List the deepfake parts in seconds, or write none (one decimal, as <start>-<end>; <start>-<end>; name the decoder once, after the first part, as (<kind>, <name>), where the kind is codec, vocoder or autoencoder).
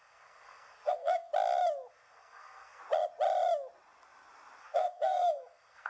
0.0-1.3 (codec, SNAC); 1.9-2.8; 4.6-5.9